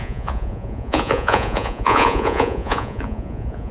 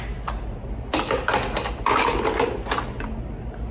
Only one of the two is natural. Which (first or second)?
second